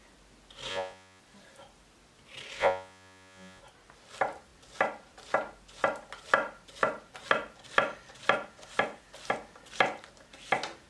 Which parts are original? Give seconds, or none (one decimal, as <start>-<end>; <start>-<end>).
0.0-0.7; 1.2-2.6; 3.6-10.9